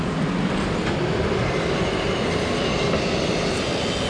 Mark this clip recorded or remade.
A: recorded